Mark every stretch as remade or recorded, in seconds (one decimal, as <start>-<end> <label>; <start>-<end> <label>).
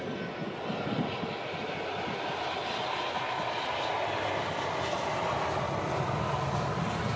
0.0-7.2 recorded